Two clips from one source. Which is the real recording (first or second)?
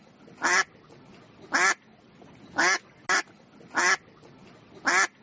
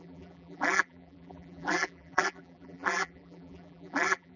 first